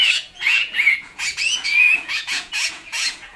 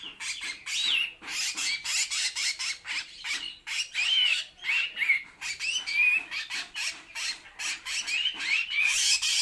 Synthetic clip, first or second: first